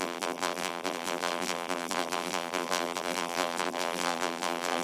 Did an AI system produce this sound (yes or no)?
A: yes